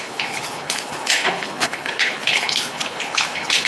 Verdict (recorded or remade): remade